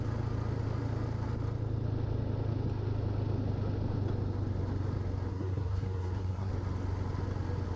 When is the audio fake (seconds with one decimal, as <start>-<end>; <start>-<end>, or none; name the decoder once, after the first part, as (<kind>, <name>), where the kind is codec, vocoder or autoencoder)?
5.3-6.5 (codec, SNAC)